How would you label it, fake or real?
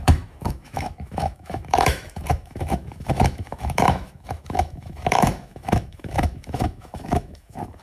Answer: fake